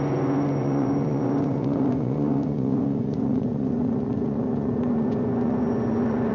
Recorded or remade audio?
remade